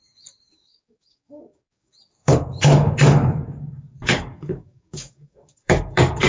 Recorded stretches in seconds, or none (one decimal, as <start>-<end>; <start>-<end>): none